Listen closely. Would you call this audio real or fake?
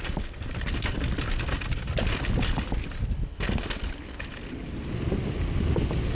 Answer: real